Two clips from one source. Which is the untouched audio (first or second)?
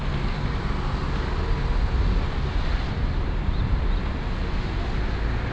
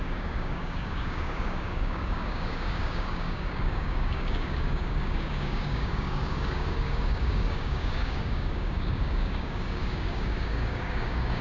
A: first